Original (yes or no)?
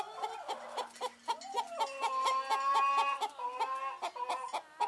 yes